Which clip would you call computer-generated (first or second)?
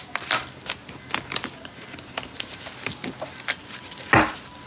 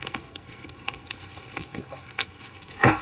second